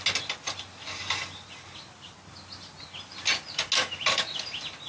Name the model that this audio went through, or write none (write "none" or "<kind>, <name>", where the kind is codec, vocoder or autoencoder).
none